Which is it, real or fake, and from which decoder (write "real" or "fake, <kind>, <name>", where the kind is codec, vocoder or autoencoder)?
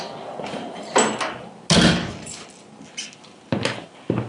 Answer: real